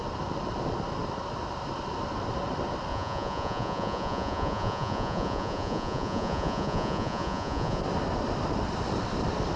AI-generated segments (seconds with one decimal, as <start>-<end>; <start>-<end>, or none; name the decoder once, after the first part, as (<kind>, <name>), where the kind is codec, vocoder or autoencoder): 2.9-7.8 (vocoder, Vocos)